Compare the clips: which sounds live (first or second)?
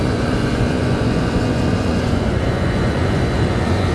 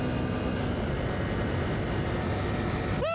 second